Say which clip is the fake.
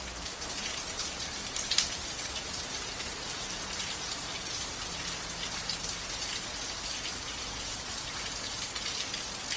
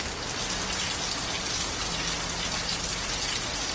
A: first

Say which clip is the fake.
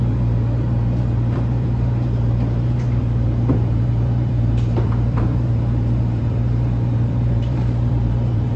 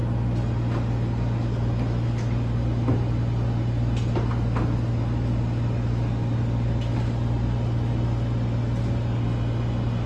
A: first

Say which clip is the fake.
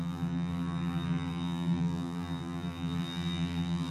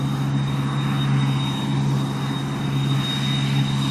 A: first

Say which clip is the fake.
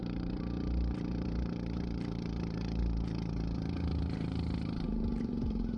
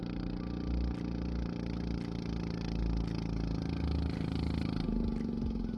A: first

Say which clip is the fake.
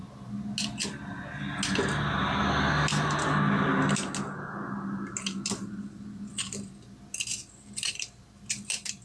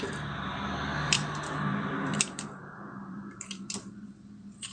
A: second